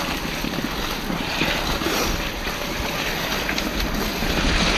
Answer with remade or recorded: recorded